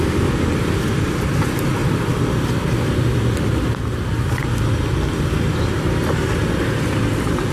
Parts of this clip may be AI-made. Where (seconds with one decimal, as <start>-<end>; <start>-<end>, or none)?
1.8-3.6